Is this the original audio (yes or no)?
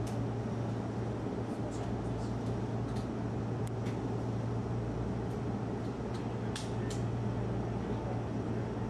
yes